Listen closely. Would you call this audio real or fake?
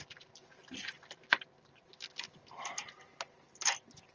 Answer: real